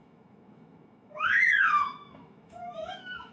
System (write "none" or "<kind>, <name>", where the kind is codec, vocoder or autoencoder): autoencoder, DAC-VAE